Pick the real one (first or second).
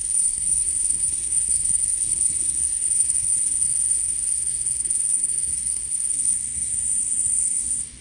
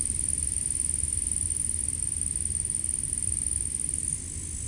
second